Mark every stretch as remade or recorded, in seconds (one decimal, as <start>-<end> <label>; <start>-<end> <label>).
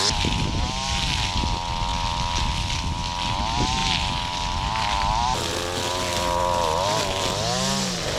0.0-8.2 recorded